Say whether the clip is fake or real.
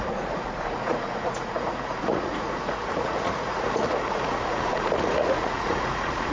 fake